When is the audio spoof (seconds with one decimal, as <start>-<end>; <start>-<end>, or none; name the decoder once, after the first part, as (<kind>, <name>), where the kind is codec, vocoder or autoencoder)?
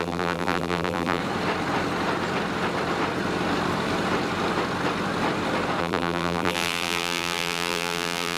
0.0-1.2 (vocoder, BigVGAN v2); 5.8-8.4